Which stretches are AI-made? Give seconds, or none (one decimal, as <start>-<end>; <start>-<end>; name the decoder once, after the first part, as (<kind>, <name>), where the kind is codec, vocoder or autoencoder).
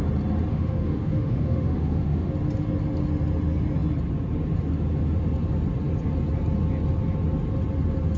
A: 0.5-2.3 (autoencoder, DAC-VAE)